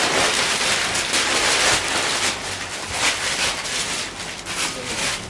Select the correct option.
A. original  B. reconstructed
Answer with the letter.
A